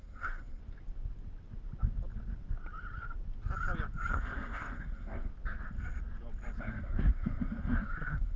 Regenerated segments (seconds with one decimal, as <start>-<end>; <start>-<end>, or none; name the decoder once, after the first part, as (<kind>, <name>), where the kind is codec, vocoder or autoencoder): 0.0-0.6 (codec, SNAC); 4.1-5.3; 6.6-8.4